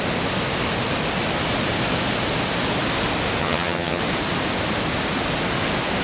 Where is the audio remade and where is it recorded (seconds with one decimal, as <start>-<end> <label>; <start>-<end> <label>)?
0.0-3.4 recorded; 3.4-4.0 remade; 4.0-6.0 recorded

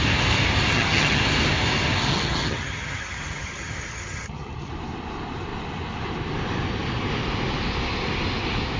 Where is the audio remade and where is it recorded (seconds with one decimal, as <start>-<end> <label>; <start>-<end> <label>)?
0.0-0.7 recorded; 0.7-1.2 remade; 1.2-2.1 recorded; 2.1-4.7 remade; 4.7-8.8 recorded

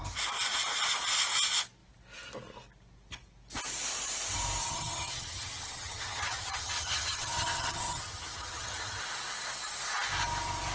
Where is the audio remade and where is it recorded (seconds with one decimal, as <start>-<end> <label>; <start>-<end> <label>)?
0.0-4.6 recorded; 4.6-9.0 remade; 9.0-10.7 recorded